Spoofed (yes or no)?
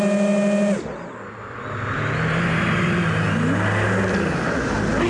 no